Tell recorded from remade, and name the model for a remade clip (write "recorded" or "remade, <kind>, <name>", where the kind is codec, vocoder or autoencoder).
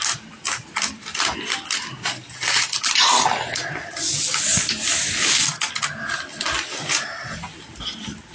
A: recorded